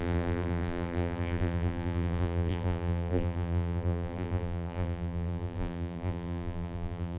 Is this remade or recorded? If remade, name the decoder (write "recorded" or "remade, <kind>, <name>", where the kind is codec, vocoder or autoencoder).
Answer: remade, vocoder, BigVGAN v2